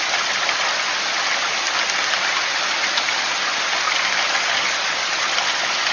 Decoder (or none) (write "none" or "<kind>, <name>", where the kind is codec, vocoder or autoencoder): none